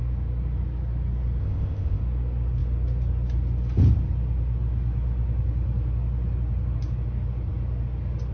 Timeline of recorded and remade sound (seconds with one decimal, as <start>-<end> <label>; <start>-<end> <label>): 0.0-1.4 recorded; 1.4-2.0 remade; 2.0-8.3 recorded